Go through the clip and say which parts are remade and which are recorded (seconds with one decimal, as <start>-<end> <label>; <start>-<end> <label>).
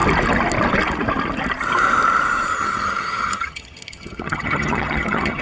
0.0-2.5 recorded; 2.5-5.4 remade